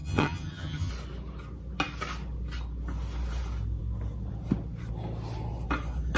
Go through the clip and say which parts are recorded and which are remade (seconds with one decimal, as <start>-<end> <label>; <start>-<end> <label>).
0.0-0.9 remade; 0.9-6.2 recorded